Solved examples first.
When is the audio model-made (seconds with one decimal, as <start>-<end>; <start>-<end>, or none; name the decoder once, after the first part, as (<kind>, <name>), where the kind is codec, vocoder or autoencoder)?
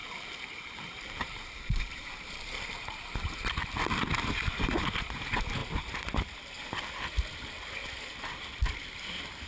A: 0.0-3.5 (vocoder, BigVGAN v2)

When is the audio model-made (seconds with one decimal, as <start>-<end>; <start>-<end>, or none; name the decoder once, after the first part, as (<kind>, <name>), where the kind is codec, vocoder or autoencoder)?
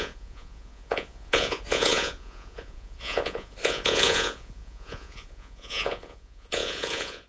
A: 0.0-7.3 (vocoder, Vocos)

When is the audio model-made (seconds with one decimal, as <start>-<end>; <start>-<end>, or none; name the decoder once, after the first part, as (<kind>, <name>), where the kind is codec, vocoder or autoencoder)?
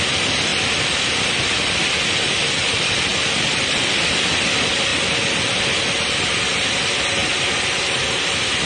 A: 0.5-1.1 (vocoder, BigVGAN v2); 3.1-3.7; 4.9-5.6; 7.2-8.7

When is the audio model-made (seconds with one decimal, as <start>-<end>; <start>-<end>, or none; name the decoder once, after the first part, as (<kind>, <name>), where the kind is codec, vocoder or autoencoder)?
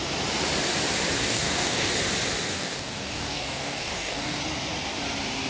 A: 1.2-1.9 (codec, DAC); 2.5-4.4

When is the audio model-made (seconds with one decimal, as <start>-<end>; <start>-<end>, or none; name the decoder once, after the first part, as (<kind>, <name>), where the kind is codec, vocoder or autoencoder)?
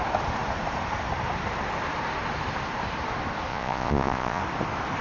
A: 3.5-4.4 (vocoder, Vocos)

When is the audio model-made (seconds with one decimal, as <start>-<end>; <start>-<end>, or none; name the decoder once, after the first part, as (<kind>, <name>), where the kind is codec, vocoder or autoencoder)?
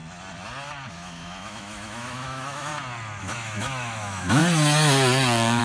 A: 0.9-2.7 (autoencoder, DAC-VAE); 3.2-4.4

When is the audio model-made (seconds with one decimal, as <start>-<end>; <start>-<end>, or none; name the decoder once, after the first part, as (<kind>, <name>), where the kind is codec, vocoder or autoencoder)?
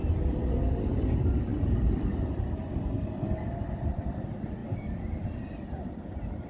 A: 1.5-2.7 (vocoder, BigVGAN v2); 4.6-6.0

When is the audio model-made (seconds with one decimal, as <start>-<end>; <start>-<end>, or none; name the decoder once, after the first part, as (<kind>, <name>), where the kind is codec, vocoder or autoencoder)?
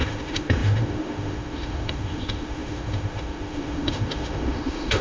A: 0.0-5.0 (autoencoder, DAC-VAE)